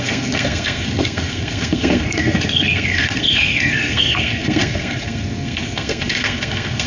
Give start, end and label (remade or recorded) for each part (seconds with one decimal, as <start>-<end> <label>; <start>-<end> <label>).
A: 0.0-6.9 remade

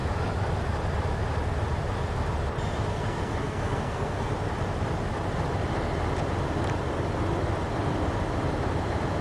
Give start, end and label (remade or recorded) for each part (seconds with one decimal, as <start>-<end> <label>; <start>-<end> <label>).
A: 0.0-2.9 recorded; 2.9-4.3 remade; 4.3-9.2 recorded

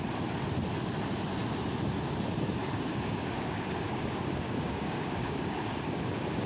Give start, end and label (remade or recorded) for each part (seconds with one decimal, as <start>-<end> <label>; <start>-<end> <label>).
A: 0.0-2.6 recorded; 2.6-6.5 remade

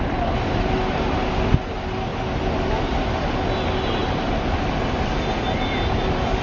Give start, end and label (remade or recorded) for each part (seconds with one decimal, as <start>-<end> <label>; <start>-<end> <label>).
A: 0.0-6.4 recorded

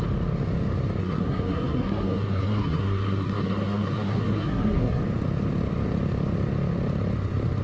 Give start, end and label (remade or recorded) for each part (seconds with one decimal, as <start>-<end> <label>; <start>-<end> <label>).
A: 0.0-1.0 recorded; 1.0-5.0 remade; 5.0-7.6 recorded

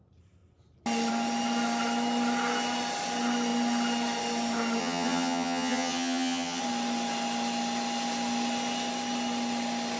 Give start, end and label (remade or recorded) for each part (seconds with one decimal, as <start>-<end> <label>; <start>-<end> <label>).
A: 0.0-4.8 recorded; 4.8-6.6 remade; 6.6-10.0 recorded

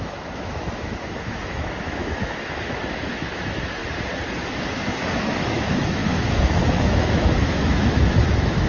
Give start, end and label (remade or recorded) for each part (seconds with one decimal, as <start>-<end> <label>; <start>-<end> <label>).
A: 0.0-3.8 remade; 3.8-4.6 recorded; 4.6-8.7 remade

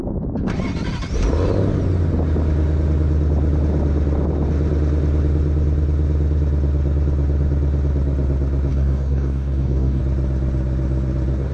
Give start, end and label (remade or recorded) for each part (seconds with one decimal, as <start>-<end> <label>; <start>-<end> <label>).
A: 0.0-8.7 recorded; 8.7-10.0 remade; 10.0-11.5 recorded